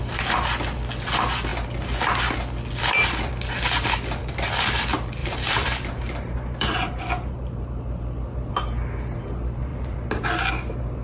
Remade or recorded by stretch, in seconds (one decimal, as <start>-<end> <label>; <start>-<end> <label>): 0.0-4.2 recorded; 4.2-4.8 remade; 4.8-5.2 recorded; 5.2-8.5 remade; 8.5-9.7 recorded; 9.7-10.5 remade; 10.5-11.0 recorded